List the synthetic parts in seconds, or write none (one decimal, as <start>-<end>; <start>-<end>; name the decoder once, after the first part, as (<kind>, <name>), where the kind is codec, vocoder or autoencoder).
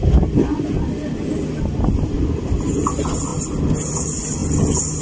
none